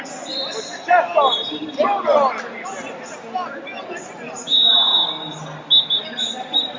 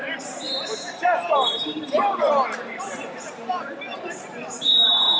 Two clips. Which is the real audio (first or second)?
first